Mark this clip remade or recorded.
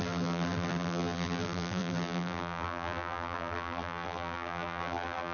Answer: remade